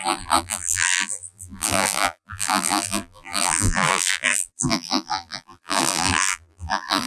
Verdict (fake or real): fake